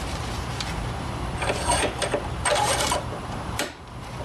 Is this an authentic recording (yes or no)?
no